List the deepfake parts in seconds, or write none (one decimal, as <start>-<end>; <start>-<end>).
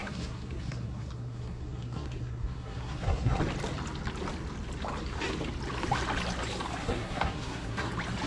0.0-3.4; 6.8-7.9